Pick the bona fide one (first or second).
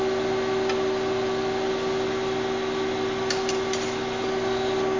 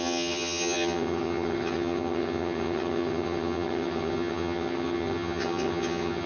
first